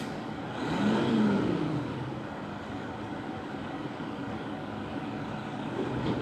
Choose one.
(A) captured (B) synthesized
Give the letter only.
B